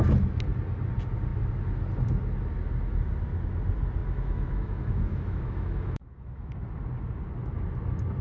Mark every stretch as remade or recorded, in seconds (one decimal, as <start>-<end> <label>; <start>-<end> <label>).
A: 0.0-4.0 recorded; 4.0-6.5 remade; 6.5-8.2 recorded